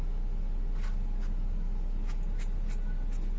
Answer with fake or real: real